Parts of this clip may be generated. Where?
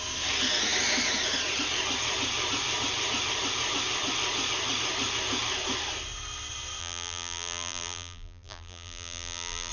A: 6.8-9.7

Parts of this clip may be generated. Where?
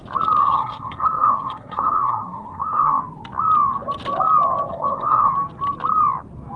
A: 0.4-3.0; 4.7-5.3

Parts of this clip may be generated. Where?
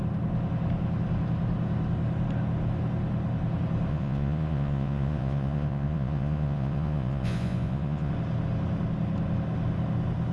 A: 3.9-8.1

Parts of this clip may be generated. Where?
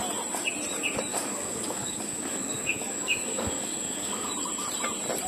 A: 1.1-4.3